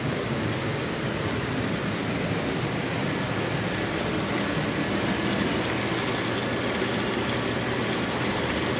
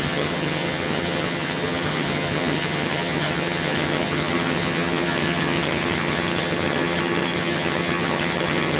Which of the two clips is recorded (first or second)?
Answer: first